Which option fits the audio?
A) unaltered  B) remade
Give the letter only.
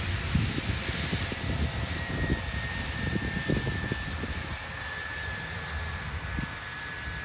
B